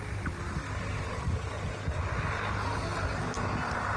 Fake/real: real